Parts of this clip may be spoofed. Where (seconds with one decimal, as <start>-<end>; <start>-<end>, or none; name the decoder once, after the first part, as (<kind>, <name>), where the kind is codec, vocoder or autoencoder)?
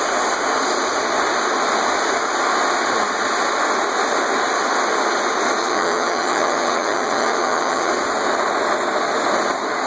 5.6-7.9 (vocoder, HiFi-GAN)